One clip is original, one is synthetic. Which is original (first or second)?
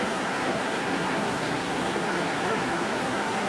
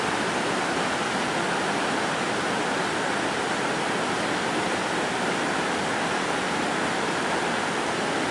second